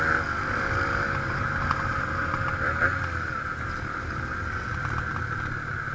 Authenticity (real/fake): real